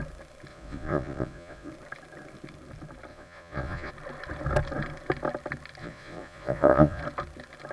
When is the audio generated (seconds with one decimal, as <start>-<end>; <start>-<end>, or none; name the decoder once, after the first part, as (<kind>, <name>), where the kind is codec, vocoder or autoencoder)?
0.5-1.7 (vocoder, Vocos); 3.1-3.9; 5.8-7.0